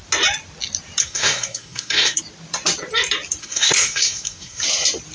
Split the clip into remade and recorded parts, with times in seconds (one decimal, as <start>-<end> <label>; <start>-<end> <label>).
0.0-1.0 recorded; 1.0-2.2 remade; 2.2-3.4 recorded; 3.4-4.6 remade; 4.6-5.1 recorded